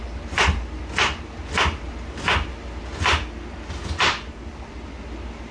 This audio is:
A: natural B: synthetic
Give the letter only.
A